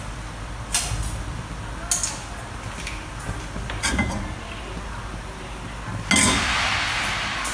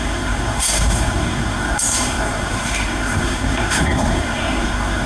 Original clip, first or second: first